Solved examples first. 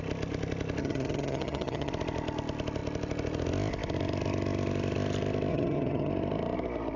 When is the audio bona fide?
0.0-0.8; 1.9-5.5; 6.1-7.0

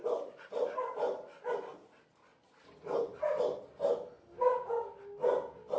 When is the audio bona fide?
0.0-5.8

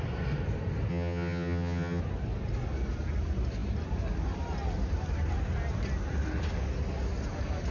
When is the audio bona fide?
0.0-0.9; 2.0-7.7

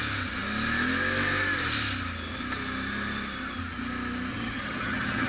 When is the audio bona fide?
0.0-4.3